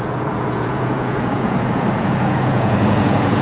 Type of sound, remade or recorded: remade